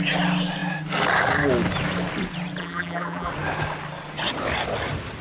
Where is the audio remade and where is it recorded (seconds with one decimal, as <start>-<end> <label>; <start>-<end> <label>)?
0.0-2.6 recorded; 2.6-3.3 remade; 3.3-5.2 recorded